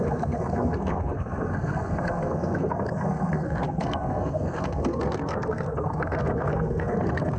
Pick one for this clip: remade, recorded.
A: remade